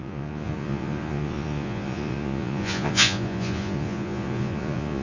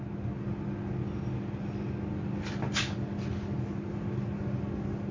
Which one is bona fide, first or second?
second